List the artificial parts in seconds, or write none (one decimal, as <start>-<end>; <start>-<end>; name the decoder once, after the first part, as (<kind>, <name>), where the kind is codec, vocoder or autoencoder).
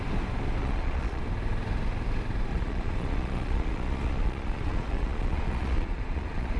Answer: 0.6-1.2 (vocoder, Vocos); 2.5-6.6